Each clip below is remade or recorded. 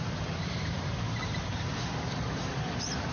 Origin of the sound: remade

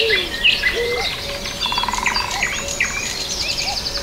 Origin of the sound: recorded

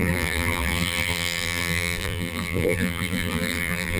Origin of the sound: remade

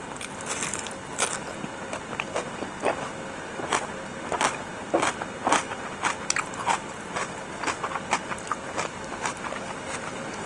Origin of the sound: recorded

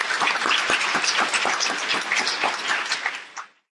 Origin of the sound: recorded